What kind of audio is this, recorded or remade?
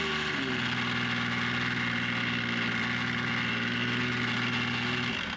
recorded